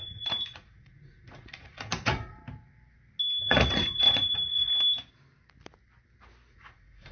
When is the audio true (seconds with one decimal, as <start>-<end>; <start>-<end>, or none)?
2.4-3.4; 4.7-6.5